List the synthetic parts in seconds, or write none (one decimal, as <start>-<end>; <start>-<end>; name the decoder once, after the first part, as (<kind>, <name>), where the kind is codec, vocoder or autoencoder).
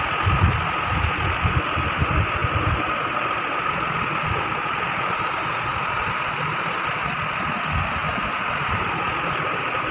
5.7-6.2 (vocoder, BigVGAN v2); 8.0-8.7